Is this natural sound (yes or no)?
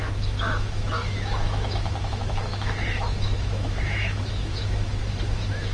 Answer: no